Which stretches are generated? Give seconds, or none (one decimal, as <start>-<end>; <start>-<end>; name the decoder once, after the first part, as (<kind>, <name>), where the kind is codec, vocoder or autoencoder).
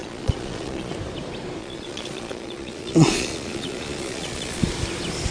0.0-0.9 (vocoder, Vocos); 1.6-4.6